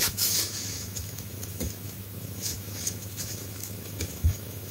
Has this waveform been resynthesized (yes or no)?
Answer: yes